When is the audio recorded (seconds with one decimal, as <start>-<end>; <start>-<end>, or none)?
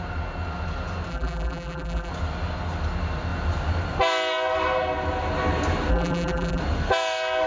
0.0-1.1; 2.1-5.9; 6.6-7.5